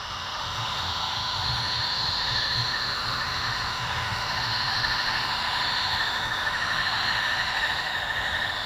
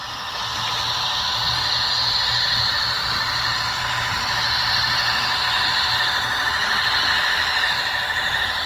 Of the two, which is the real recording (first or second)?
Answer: second